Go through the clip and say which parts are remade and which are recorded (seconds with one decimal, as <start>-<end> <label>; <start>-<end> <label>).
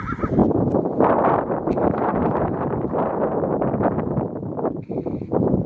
0.0-5.7 remade